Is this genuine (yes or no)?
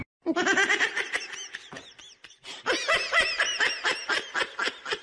yes